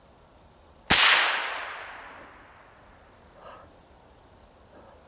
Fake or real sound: real